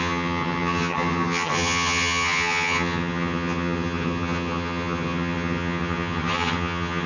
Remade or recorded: remade